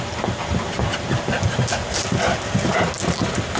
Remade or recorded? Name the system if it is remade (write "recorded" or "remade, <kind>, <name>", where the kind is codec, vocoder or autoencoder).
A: recorded